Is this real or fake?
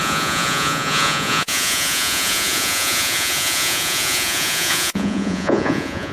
fake